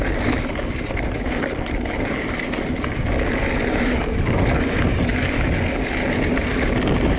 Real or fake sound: real